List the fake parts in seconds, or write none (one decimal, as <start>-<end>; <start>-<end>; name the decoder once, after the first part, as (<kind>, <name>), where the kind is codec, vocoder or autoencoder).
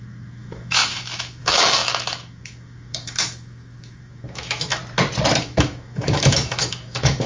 0.0-4.8 (autoencoder, DAC-VAE); 5.4-7.3